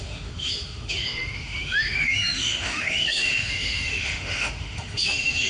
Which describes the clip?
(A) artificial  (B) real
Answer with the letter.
A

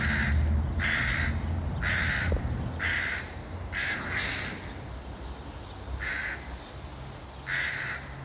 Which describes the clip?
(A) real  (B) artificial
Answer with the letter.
A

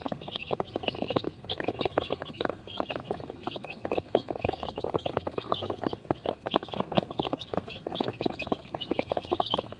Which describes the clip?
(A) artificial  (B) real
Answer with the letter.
A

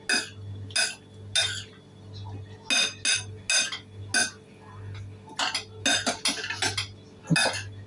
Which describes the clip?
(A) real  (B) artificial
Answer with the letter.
A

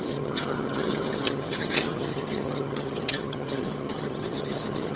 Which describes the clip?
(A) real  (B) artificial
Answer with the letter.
B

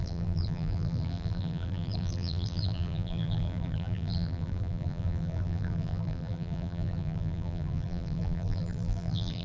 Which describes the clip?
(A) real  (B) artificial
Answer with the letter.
B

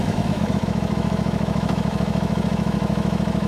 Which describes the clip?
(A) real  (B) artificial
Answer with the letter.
B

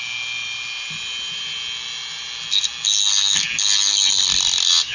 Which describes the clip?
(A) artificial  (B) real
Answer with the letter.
B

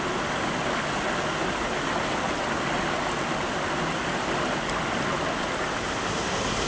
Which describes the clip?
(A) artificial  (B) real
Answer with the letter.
B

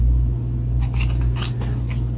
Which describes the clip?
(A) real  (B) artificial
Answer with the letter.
A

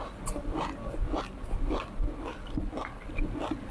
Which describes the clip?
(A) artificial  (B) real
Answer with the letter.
B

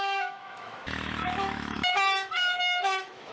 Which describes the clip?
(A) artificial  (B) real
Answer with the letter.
A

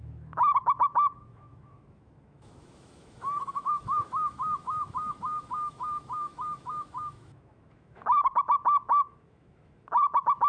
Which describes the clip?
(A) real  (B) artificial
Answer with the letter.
B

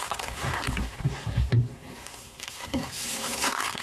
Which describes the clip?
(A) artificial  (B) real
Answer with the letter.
A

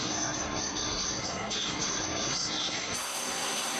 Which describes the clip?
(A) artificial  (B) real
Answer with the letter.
A